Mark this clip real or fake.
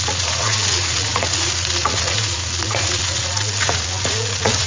fake